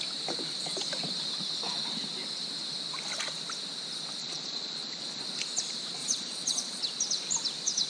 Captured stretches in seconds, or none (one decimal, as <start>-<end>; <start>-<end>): 0.0-4.2; 5.2-6.0; 6.8-7.9

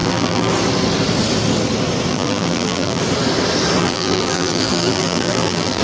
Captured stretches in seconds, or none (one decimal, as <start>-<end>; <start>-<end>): 0.5-2.1; 3.0-3.8

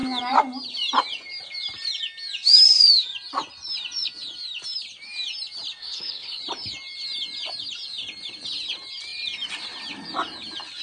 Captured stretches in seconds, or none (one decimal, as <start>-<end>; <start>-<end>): 0.0-5.8; 6.4-10.8

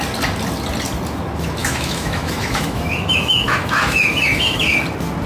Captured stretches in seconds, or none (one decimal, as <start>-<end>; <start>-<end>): 0.0-1.6; 4.8-5.3

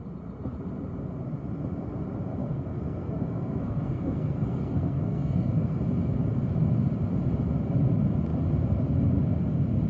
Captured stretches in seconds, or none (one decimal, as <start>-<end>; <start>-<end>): 0.0-2.4; 5.8-9.9

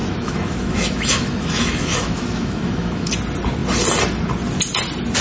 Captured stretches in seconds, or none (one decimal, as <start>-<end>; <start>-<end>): 3.1-5.2

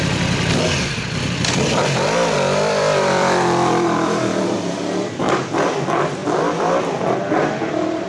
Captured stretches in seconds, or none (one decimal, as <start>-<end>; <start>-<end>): none